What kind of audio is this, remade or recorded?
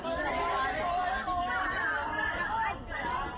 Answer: recorded